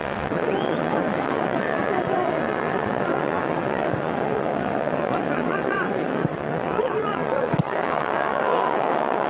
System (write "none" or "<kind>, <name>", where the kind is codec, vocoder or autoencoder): vocoder, WaveNeXt